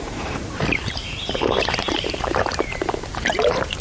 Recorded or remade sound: remade